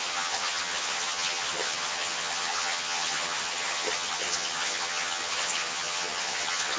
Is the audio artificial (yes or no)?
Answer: yes